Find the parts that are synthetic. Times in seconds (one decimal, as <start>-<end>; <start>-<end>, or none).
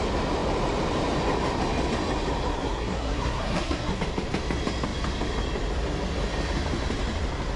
2.5-4.0